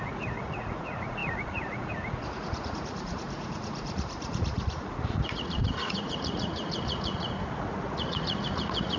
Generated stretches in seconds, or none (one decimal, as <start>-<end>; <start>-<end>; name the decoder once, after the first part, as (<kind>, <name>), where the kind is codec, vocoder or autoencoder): 0.0-9.0 (vocoder, Vocos)

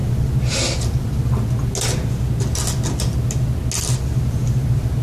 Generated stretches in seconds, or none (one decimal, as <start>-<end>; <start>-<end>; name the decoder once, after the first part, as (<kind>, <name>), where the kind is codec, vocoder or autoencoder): none

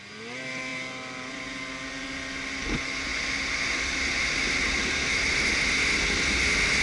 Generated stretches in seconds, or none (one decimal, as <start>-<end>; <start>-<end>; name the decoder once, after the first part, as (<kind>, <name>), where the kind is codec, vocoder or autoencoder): none

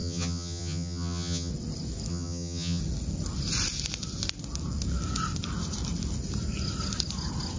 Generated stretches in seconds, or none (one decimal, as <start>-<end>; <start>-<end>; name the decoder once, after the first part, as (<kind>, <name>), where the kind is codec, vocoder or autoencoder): 0.0-1.5 (vocoder, HiFi-GAN); 2.1-2.8

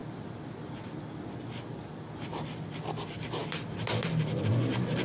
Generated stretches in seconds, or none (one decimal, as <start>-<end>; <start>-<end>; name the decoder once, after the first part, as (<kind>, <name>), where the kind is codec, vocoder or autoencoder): none